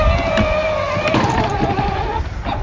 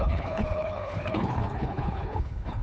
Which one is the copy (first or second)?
second